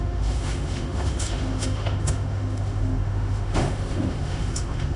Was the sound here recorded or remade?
remade